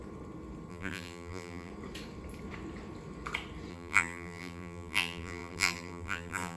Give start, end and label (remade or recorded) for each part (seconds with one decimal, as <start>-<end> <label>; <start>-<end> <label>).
0.0-0.7 recorded; 0.7-1.7 remade; 1.7-3.7 recorded; 3.7-6.6 remade